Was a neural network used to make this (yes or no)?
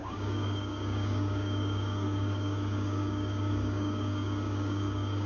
yes